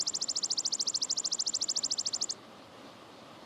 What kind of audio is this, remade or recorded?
recorded